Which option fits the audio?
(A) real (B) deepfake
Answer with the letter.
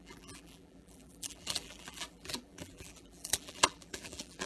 B